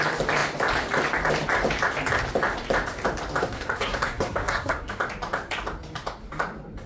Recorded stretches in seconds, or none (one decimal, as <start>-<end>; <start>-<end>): 0.0-3.4; 4.9-6.9